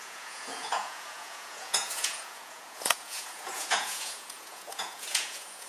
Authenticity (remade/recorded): remade